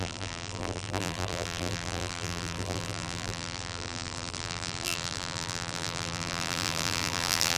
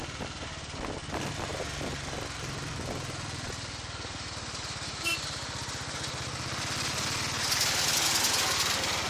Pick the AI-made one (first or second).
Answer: first